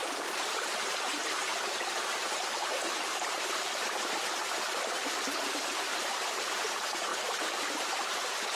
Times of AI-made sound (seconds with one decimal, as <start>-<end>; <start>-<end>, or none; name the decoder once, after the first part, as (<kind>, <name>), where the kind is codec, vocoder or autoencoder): 0.0-1.5 (vocoder, BigVGAN v2); 2.6-8.6